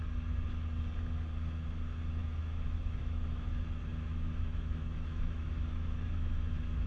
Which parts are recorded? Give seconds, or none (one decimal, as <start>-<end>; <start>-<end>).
0.0-2.2; 3.5-3.9